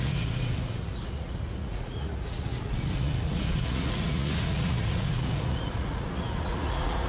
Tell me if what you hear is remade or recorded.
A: remade